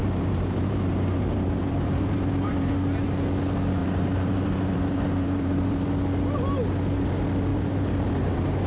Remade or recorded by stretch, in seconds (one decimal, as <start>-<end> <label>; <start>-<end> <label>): 0.0-2.7 remade; 2.7-3.8 recorded; 3.8-5.9 remade; 5.9-7.5 recorded; 7.5-8.7 remade